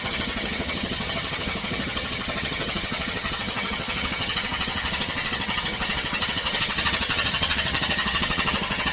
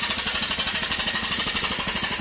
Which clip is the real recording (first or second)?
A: second